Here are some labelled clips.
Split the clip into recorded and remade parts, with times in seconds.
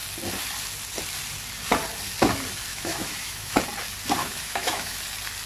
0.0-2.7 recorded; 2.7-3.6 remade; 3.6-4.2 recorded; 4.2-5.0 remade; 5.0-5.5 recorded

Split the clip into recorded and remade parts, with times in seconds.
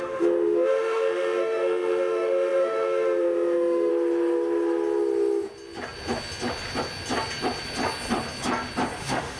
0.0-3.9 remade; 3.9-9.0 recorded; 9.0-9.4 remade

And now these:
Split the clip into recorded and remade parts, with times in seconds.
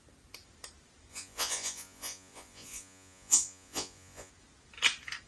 0.0-1.1 recorded; 1.1-4.3 remade; 4.3-5.3 recorded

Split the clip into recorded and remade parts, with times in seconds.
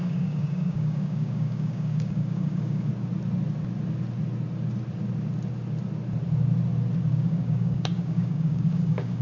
0.0-2.9 remade; 2.9-7.1 recorded; 7.1-9.2 remade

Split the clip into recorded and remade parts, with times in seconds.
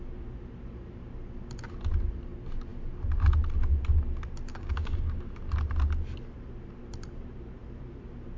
0.0-4.5 recorded; 4.5-5.3 remade; 5.3-8.4 recorded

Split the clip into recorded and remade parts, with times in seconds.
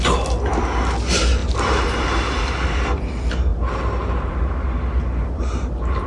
0.0-1.4 recorded; 1.4-2.8 remade; 2.8-3.5 recorded; 3.5-4.5 remade; 4.5-6.1 recorded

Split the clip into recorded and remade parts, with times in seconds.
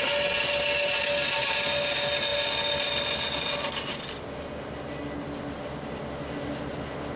0.0-7.2 recorded